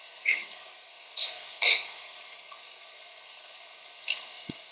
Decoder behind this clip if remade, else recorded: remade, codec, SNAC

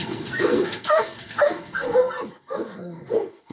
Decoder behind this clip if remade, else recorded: remade, codec, SNAC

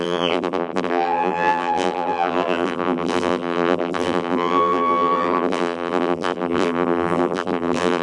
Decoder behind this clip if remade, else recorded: remade, vocoder, BigVGAN v2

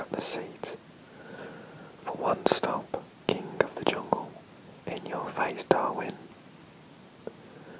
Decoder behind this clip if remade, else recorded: recorded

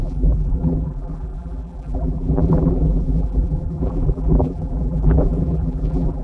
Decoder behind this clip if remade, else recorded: remade, vocoder, BigVGAN v2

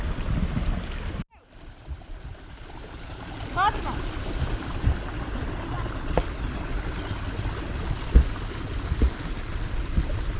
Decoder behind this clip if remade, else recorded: recorded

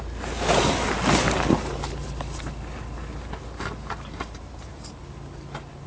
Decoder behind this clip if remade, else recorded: recorded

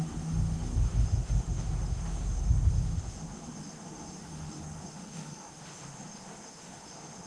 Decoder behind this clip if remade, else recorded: remade, autoencoder, DAC-VAE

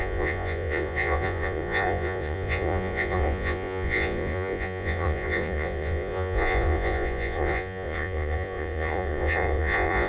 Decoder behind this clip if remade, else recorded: remade, vocoder, Vocos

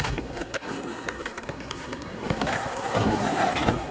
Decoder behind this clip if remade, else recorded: remade, codec, SNAC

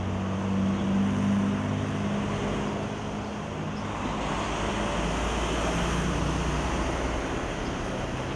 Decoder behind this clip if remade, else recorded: recorded